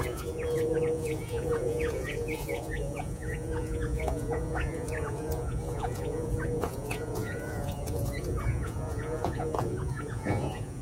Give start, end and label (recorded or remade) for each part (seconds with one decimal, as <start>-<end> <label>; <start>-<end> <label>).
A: 0.0-10.8 remade